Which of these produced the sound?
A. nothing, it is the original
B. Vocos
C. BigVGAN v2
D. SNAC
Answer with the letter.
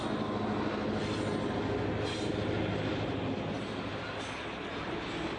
A